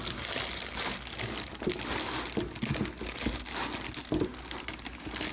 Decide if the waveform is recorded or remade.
recorded